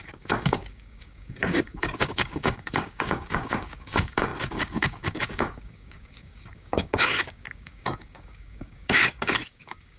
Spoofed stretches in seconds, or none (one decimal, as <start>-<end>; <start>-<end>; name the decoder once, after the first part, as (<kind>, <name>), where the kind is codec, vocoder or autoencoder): 0.0-10.0 (codec, DAC)